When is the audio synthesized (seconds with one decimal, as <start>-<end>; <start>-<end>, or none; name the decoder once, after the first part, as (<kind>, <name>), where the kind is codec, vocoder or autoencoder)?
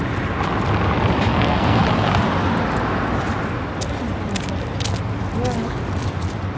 1.3-1.8 (codec, SNAC)